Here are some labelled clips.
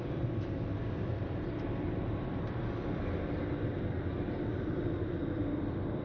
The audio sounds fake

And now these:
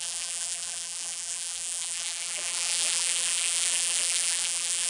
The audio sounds fake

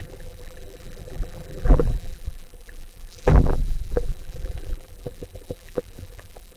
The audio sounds fake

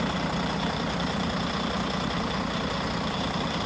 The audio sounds fake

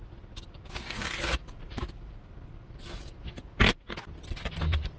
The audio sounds real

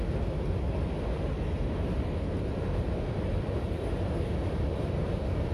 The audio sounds real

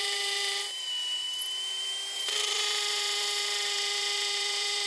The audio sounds fake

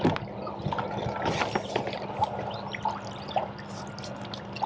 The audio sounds real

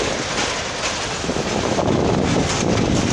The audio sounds real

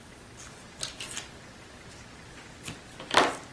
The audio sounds real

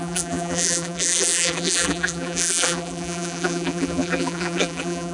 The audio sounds fake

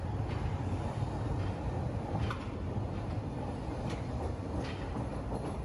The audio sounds fake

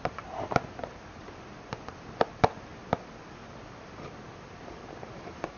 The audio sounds fake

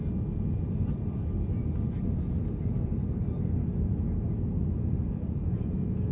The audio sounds real